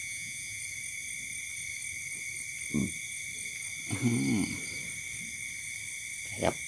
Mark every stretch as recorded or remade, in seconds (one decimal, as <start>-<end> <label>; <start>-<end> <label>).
0.0-0.6 remade; 0.6-6.7 recorded